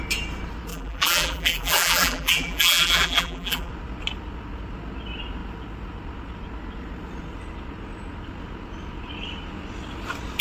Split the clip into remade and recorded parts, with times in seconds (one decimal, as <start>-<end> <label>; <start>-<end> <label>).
0.0-0.7 recorded; 0.7-3.7 remade; 3.7-10.4 recorded